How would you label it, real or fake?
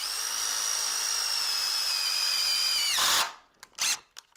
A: real